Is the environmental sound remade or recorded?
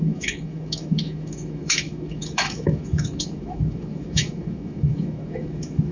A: remade